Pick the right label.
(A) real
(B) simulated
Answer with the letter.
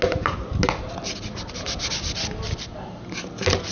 A